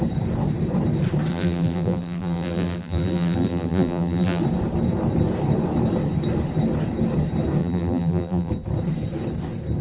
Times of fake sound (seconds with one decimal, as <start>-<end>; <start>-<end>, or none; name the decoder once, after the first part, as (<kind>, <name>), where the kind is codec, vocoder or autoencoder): 1.3-4.4 (vocoder, BigVGAN v2); 7.6-8.5